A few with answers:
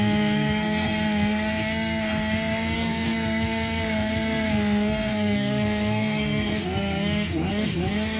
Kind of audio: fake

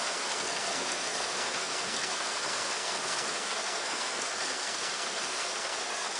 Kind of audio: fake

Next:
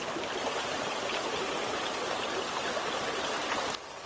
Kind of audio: real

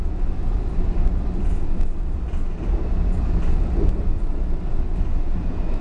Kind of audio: real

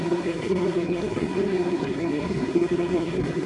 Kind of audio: fake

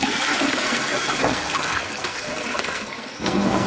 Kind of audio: fake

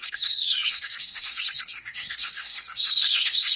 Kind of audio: fake